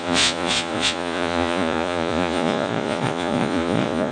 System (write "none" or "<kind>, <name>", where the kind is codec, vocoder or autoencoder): vocoder, Vocos